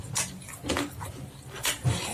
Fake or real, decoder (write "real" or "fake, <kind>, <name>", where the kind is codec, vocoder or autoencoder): real